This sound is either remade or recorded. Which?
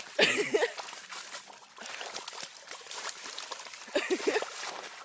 recorded